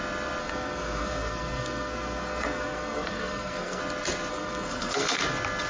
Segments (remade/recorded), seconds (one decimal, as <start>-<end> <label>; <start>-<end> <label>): 0.0-0.4 recorded; 0.4-3.8 remade; 3.8-4.3 recorded; 4.3-5.2 remade; 5.2-5.7 recorded